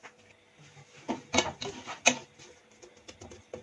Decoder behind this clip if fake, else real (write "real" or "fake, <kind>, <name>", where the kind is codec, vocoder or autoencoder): real